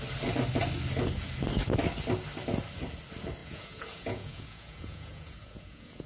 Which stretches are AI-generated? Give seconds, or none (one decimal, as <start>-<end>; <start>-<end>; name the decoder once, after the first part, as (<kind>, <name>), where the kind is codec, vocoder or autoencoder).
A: 3.4-6.1 (vocoder, Vocos)